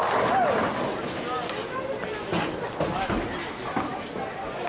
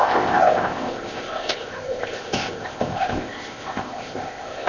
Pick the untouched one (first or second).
first